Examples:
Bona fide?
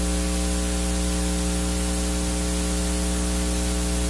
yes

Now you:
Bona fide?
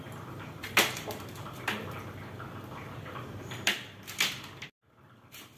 yes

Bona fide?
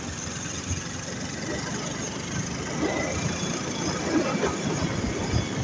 yes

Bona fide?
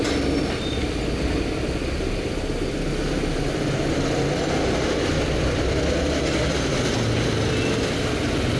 yes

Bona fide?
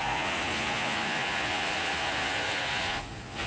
no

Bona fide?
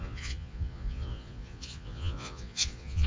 no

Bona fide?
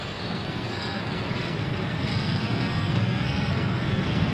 no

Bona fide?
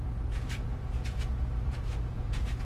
no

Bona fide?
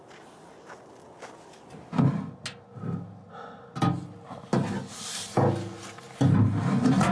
yes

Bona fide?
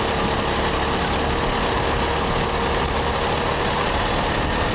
yes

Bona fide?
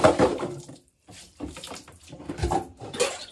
no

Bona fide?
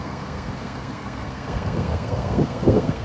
no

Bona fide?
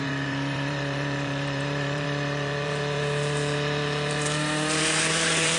no